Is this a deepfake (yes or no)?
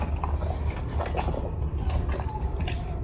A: no